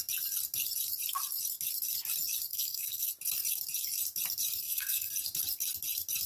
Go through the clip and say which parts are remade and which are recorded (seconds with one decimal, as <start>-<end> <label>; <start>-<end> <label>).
0.0-2.5 recorded; 2.5-3.1 remade; 3.1-4.6 recorded; 4.6-5.1 remade; 5.1-6.3 recorded